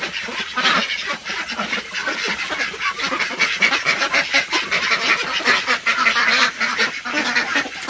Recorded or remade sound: recorded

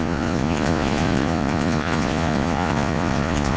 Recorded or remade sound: remade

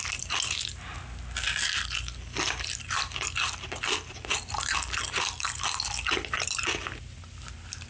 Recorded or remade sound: recorded